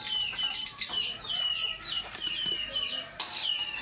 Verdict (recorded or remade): remade